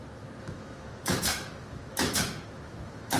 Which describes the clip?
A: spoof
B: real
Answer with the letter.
A